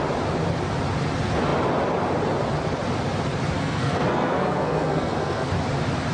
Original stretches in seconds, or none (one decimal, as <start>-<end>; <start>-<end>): 0.0-3.6; 5.5-6.1